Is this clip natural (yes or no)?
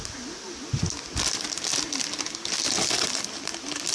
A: yes